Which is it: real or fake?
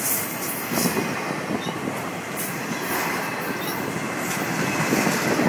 real